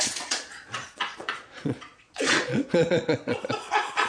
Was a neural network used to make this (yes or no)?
yes